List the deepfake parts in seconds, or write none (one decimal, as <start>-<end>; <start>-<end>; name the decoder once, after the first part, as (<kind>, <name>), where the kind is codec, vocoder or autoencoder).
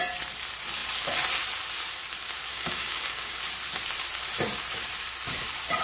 2.5-3.4 (codec, DAC)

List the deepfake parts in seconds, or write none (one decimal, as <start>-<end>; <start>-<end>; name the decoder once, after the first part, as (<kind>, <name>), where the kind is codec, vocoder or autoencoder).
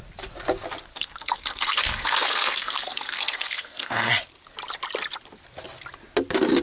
0.9-4.1 (codec, SNAC)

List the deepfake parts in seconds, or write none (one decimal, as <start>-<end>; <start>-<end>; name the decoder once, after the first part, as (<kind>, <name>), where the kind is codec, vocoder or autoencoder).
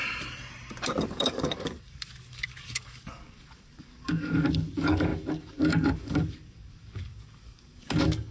1.1-8.3 (codec, DAC)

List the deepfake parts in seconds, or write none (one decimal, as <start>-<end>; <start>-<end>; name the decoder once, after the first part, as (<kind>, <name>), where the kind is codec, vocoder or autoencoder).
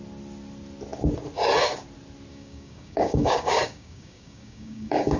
2.3-5.2 (codec, DAC)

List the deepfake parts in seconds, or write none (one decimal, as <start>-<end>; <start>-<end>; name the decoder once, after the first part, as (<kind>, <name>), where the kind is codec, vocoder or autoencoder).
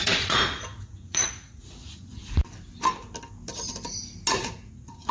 0.0-2.1 (vocoder, Vocos); 4.3-5.1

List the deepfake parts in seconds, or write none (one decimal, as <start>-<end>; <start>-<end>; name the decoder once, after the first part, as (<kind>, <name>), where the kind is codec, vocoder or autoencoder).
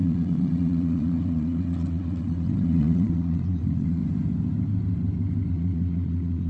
0.0-4.0 (vocoder, Vocos); 5.5-6.5